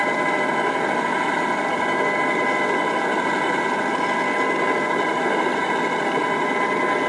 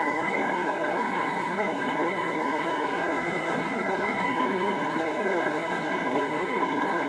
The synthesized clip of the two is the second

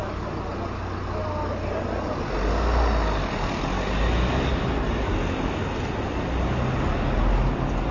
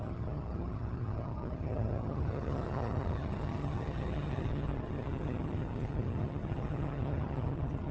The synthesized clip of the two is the second